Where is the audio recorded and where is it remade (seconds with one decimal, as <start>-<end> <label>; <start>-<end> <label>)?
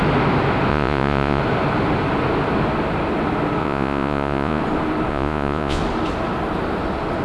0.0-0.7 recorded; 0.7-1.4 remade; 1.4-3.6 recorded; 3.6-4.6 remade; 4.6-5.1 recorded; 5.1-5.8 remade; 5.8-7.2 recorded